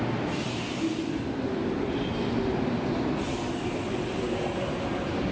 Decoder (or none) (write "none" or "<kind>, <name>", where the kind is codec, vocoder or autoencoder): none